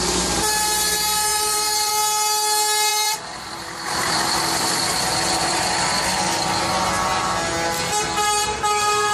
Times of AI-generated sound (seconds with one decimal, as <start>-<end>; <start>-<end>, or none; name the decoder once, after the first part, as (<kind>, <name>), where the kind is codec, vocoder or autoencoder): 1.3-1.9 (vocoder, BigVGAN v2); 2.9-6.2